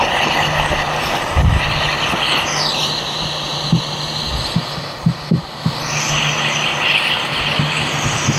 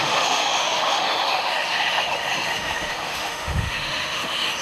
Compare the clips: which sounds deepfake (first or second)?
second